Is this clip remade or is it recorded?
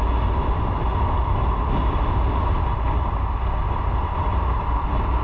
recorded